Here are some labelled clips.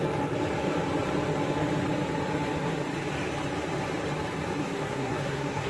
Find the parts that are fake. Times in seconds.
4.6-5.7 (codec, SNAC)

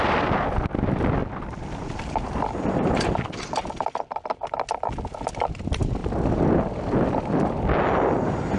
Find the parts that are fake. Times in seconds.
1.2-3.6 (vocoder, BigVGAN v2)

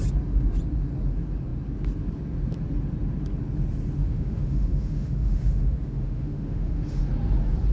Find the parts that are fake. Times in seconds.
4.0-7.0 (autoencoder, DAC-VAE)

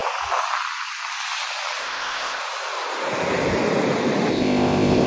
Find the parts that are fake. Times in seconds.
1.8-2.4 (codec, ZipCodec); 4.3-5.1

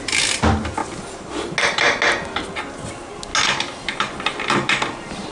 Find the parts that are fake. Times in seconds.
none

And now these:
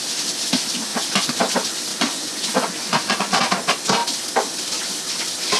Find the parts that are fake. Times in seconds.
0.9-1.4 (vocoder, Vocos); 1.9-3.4

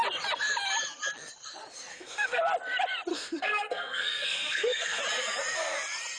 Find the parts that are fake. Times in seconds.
1.9-2.4 (codec, SNAC); 3.1-5.0

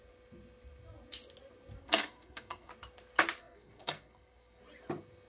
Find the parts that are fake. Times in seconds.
1.8-2.7 (codec, SNAC); 3.4-4.6